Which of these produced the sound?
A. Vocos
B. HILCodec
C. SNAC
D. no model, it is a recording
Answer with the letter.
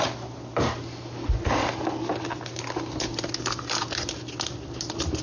D